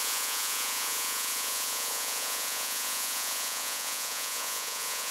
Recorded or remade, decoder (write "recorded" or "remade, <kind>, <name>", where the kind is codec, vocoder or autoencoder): remade, vocoder, Vocos